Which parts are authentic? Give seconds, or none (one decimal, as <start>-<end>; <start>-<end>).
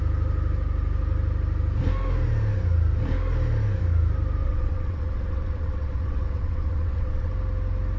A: 0.0-4.4; 7.3-8.0